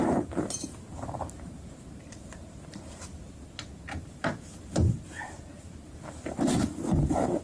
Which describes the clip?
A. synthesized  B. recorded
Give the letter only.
A